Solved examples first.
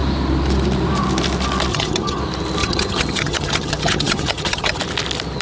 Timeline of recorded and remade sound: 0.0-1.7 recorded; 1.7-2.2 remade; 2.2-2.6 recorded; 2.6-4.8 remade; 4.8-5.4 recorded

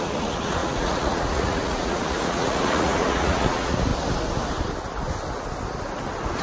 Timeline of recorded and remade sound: 0.0-3.9 remade; 3.9-6.4 recorded

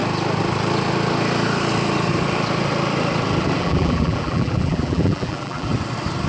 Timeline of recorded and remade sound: 0.0-3.6 recorded; 3.6-5.7 remade; 5.7-6.3 recorded

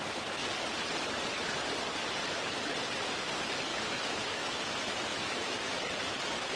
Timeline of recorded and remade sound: 0.0-3.7 recorded; 3.7-4.6 remade; 4.6-5.1 recorded; 5.1-5.9 remade; 5.9-6.6 recorded

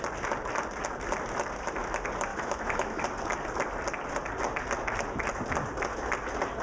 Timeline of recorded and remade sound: 0.0-2.3 recorded; 2.3-3.0 remade; 3.0-6.6 recorded

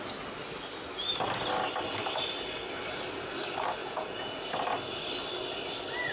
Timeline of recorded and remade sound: 0.0-3.8 recorded; 3.8-4.5 remade; 4.5-6.1 recorded

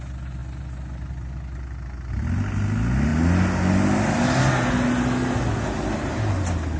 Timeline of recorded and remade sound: 0.0-6.8 recorded

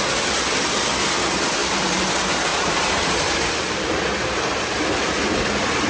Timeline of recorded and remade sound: 0.0-1.6 recorded; 1.6-2.1 remade; 2.1-2.5 recorded; 2.5-4.0 remade; 4.0-5.9 recorded